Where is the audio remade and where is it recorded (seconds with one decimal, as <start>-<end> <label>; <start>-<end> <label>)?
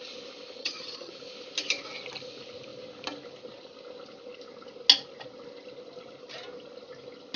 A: 0.0-0.6 recorded; 0.6-1.1 remade; 1.1-7.4 recorded